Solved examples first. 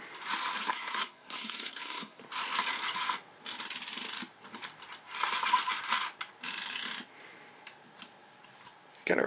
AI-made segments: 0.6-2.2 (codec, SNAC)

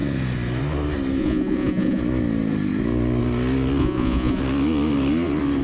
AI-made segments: 1.2-2.0 (vocoder, Vocos); 3.8-4.4

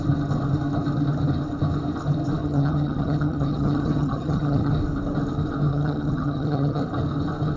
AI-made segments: 2.4-4.7 (vocoder, HiFi-GAN); 5.7-6.8

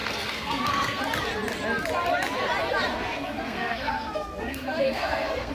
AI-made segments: 0.0-1.0 (codec, SNAC); 2.9-5.5